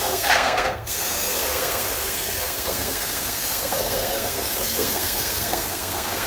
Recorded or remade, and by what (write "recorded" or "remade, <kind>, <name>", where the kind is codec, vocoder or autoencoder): remade, codec, SNAC